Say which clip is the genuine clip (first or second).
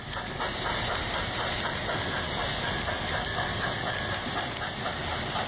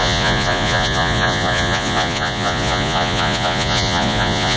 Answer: first